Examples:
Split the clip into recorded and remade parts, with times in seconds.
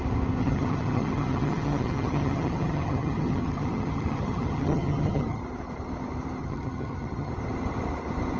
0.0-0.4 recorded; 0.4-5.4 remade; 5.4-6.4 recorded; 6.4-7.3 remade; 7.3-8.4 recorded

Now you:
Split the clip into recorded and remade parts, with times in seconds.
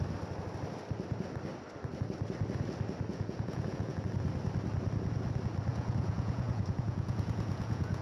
0.0-3.1 recorded; 3.1-4.0 remade; 4.0-5.7 recorded; 5.7-8.0 remade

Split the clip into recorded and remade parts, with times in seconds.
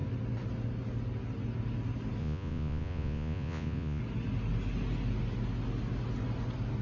0.0-2.2 recorded; 2.2-4.0 remade; 4.0-6.8 recorded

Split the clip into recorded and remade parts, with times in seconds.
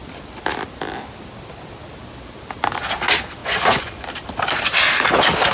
0.0-3.4 recorded; 3.4-4.0 remade; 4.0-5.5 recorded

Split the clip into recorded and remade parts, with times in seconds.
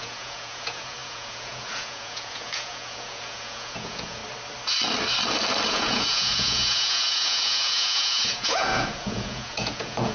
0.0-4.2 remade; 4.2-5.7 recorded; 5.7-10.1 remade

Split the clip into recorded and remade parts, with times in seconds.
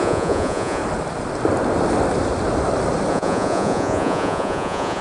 0.0-0.8 remade; 0.8-3.1 recorded; 3.1-5.0 remade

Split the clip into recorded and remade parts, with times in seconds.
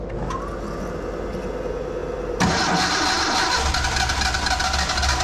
0.0-5.2 recorded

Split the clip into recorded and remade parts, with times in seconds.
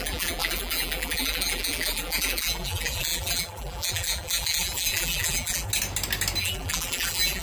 0.0-5.7 remade; 5.7-6.4 recorded; 6.4-7.4 remade